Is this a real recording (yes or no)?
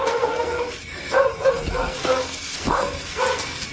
no